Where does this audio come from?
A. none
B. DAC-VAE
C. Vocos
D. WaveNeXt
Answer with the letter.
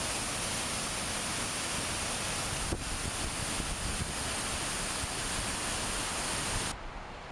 A